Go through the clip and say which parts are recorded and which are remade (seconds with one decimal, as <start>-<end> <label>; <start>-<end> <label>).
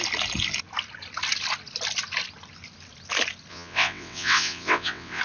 0.0-3.5 recorded; 3.5-5.2 remade